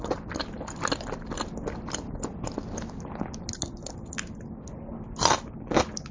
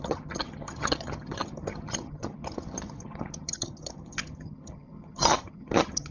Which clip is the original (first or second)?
first